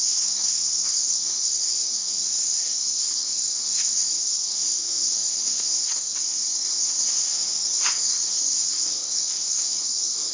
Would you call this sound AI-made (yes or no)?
yes